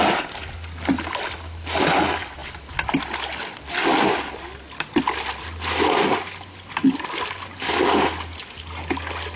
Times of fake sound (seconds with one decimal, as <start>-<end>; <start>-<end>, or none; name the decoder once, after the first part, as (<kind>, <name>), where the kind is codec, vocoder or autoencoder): none